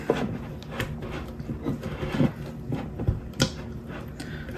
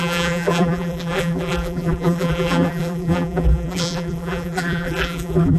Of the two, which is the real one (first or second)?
first